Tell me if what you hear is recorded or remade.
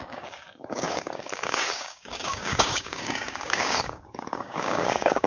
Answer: remade